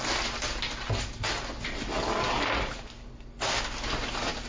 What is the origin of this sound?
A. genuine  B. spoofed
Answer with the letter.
A